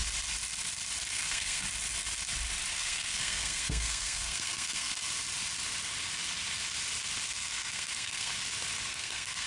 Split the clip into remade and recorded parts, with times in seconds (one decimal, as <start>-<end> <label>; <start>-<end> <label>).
0.0-1.1 recorded; 1.1-1.6 remade; 1.6-2.7 recorded; 2.7-5.0 remade; 5.0-7.3 recorded; 7.3-8.3 remade; 8.3-8.9 recorded; 8.9-9.5 remade